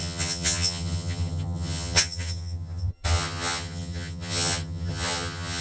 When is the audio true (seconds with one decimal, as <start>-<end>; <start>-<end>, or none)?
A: none